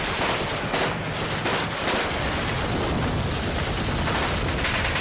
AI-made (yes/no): no